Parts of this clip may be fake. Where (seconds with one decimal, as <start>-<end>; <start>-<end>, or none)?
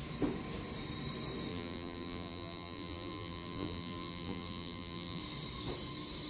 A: 1.5-5.2